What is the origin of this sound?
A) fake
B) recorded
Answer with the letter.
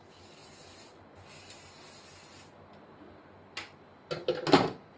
B